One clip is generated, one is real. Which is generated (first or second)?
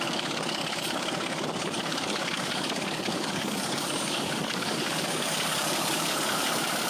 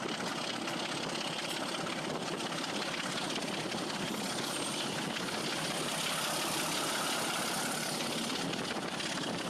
first